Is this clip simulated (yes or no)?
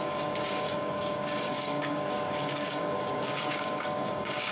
yes